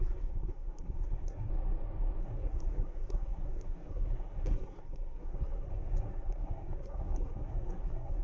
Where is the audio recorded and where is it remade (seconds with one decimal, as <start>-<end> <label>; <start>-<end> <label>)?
0.0-1.5 remade; 1.5-2.2 recorded; 2.2-8.2 remade